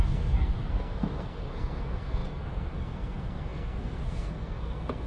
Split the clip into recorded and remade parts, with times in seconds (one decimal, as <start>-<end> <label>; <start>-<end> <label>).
0.0-5.1 remade